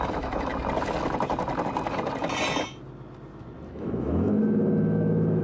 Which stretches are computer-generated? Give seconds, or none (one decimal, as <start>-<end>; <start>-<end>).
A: 0.0-0.5; 3.7-5.4